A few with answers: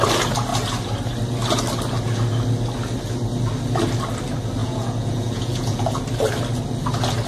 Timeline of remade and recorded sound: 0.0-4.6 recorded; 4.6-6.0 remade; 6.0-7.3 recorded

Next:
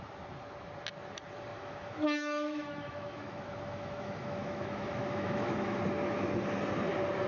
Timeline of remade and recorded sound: 0.0-1.5 recorded; 1.5-5.8 remade; 5.8-7.3 recorded

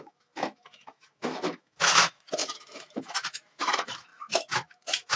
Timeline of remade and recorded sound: 0.0-5.2 remade